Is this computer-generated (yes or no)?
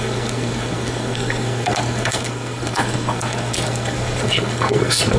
yes